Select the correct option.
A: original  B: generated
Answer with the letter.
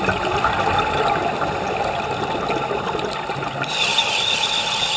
A